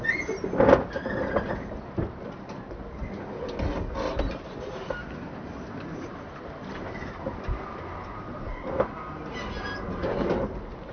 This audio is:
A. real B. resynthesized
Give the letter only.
A